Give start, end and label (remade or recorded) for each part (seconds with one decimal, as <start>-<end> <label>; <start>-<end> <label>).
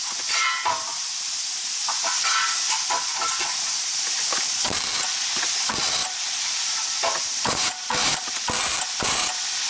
0.0-3.4 recorded; 3.4-4.2 remade; 4.2-6.0 recorded; 6.0-8.2 remade; 8.2-9.7 recorded